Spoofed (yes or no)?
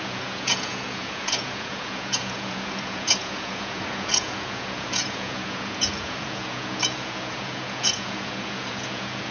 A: yes